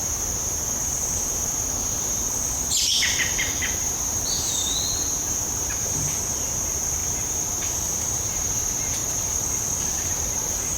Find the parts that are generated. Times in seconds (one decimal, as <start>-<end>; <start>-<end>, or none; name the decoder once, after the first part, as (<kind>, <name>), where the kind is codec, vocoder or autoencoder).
0.0-9.0 (vocoder, BigVGAN v2); 9.8-10.8